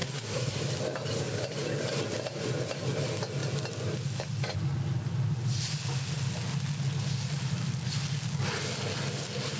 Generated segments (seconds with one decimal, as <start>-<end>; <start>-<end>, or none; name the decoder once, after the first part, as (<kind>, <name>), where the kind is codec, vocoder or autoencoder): 0.0-0.6 (codec, SNAC)